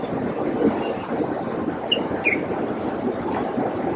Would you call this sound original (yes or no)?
yes